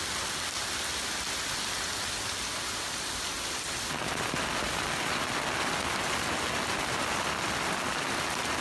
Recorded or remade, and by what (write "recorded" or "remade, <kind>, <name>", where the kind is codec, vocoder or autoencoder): recorded